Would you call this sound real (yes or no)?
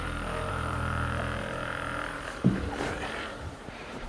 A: no